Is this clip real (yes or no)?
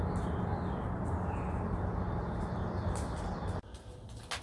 yes